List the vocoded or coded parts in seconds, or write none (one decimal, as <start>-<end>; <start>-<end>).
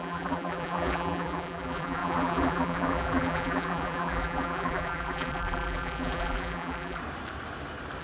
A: 0.0-7.0